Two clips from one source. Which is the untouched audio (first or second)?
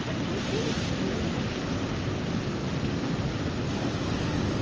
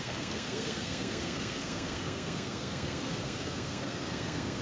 first